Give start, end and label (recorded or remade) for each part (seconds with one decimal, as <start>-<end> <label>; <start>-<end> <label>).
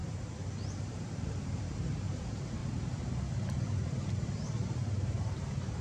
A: 0.0-2.6 remade; 2.6-3.9 recorded; 3.9-5.8 remade